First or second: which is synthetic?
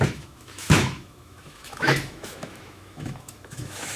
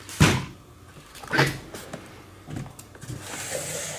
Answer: first